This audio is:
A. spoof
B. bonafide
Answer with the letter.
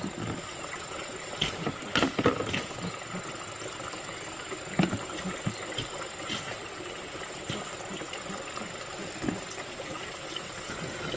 B